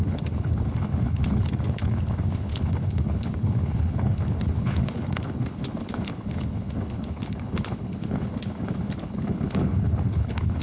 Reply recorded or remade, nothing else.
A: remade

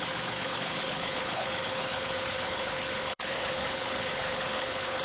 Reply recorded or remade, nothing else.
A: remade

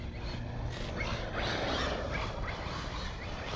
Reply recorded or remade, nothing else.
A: recorded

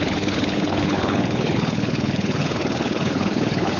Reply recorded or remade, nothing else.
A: remade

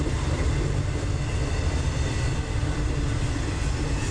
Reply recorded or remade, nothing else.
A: recorded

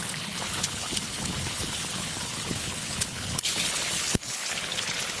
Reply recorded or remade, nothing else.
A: remade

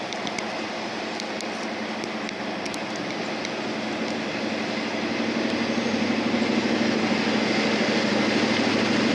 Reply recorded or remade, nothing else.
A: recorded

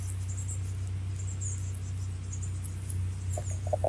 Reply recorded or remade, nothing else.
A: recorded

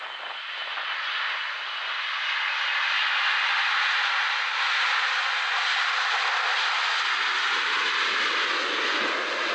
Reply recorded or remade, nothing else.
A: recorded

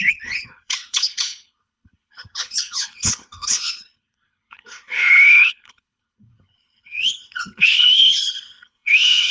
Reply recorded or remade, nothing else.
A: remade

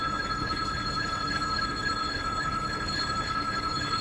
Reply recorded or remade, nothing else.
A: remade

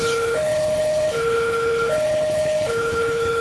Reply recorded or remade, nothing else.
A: remade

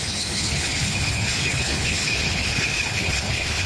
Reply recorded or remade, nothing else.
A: remade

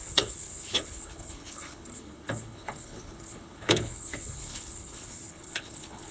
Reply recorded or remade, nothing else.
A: remade